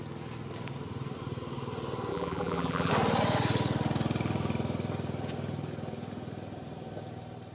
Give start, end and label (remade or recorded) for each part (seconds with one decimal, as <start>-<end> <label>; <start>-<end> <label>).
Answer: 0.0-2.1 recorded; 2.1-2.9 remade; 2.9-7.5 recorded